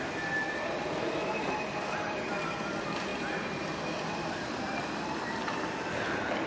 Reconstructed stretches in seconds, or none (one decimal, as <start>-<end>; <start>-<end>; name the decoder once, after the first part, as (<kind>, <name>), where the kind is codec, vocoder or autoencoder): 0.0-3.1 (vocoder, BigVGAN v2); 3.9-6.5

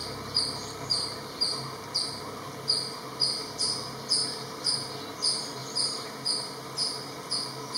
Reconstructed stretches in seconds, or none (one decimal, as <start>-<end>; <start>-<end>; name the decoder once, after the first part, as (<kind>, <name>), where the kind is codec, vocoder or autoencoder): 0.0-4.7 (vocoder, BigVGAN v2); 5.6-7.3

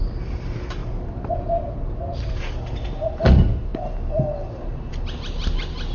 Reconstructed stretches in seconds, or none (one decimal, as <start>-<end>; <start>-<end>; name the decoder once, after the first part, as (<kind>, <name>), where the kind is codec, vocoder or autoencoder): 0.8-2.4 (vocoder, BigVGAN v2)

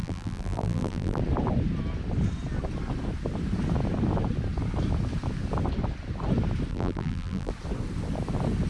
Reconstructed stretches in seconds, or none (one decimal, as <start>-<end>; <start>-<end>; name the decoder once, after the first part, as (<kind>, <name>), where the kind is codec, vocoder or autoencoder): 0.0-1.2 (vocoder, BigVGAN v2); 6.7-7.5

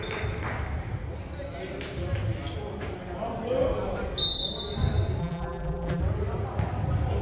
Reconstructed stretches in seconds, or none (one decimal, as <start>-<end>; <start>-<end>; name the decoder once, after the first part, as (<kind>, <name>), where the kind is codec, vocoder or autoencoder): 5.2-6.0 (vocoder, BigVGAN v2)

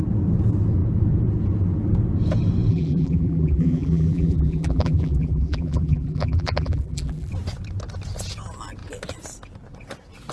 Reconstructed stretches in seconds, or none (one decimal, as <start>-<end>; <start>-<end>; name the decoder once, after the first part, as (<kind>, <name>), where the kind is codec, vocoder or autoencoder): 2.7-7.3 (vocoder, BigVGAN v2)

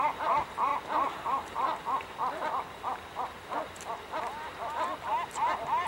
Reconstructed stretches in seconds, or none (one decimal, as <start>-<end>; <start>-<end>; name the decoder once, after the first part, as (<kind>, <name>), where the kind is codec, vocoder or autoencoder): none